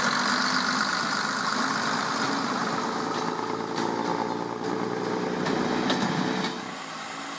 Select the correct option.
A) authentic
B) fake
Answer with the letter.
A